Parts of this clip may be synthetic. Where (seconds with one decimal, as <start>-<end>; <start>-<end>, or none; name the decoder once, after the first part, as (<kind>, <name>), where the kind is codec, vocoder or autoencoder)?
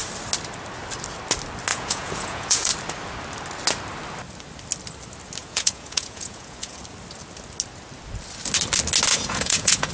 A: 1.7-2.7 (vocoder, Vocos); 5.4-6.8; 9.1-9.9